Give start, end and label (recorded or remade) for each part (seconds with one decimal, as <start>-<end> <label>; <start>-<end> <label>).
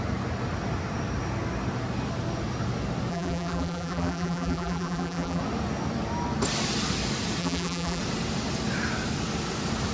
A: 0.0-3.1 recorded; 3.1-5.4 remade; 5.4-7.4 recorded; 7.4-8.0 remade; 8.0-9.9 recorded